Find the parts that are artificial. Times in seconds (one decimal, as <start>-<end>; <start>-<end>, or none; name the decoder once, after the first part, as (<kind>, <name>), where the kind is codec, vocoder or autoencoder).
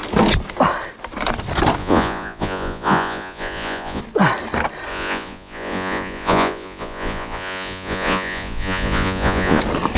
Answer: 1.8-4.0 (vocoder, Vocos); 4.9-9.6